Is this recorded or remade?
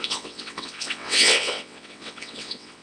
remade